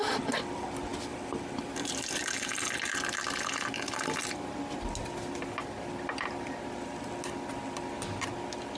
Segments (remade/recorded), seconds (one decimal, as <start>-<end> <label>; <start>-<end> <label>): 0.0-8.8 recorded